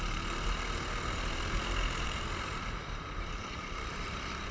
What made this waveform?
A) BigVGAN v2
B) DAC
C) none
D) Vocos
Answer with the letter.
A